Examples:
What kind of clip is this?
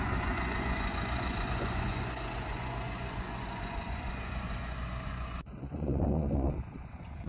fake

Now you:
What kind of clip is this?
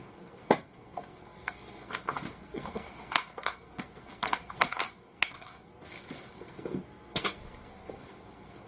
fake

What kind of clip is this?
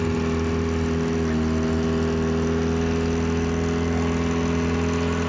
real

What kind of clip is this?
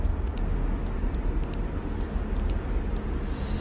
real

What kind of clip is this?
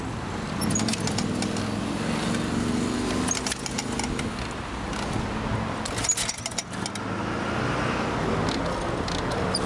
real